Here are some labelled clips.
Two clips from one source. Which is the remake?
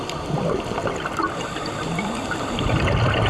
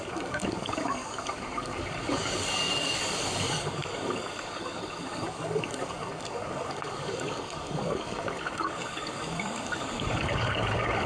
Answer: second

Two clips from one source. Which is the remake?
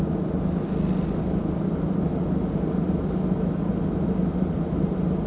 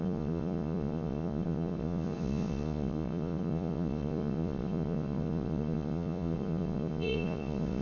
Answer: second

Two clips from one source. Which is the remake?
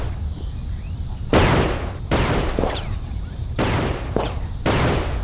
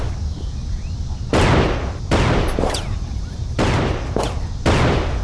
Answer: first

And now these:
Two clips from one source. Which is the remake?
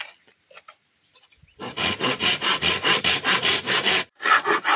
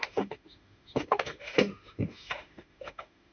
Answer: second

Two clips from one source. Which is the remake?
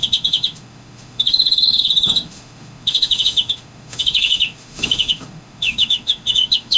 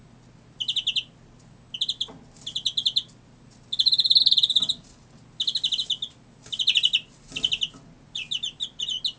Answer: first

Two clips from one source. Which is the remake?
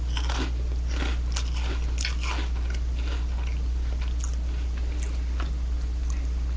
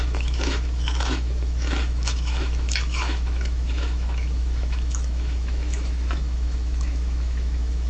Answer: second